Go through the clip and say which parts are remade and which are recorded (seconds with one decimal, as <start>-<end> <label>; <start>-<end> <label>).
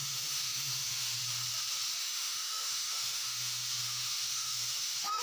0.0-1.2 remade; 1.2-2.0 recorded; 2.0-5.2 remade